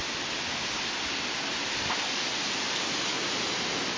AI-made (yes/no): no